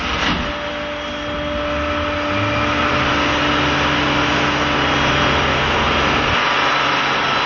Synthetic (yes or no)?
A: no